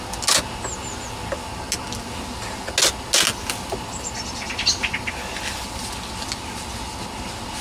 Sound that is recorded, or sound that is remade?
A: recorded